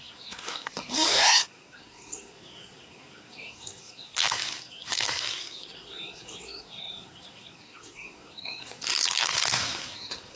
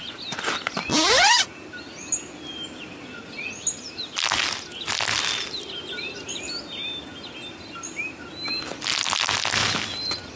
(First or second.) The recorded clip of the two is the second